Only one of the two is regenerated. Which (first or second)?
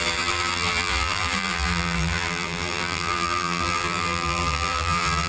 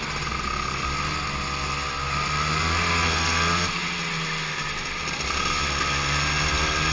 first